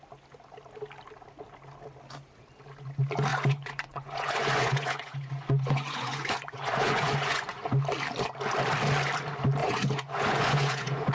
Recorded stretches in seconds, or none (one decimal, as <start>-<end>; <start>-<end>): 0.0-3.3; 7.7-9.6